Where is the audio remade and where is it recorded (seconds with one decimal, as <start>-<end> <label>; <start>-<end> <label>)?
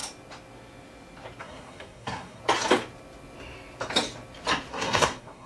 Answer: 0.0-1.4 recorded; 1.4-2.4 remade; 2.4-4.7 recorded; 4.7-5.5 remade